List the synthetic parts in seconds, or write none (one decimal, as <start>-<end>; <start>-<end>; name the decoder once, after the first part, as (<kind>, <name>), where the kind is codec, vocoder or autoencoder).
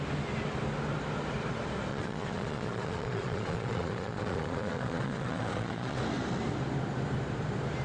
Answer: 1.9-6.0 (vocoder, Vocos)